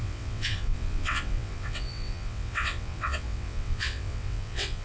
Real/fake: fake